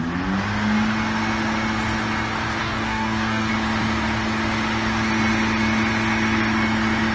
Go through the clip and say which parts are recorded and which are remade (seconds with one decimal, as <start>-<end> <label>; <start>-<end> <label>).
0.0-2.6 recorded; 2.6-3.5 remade; 3.5-7.1 recorded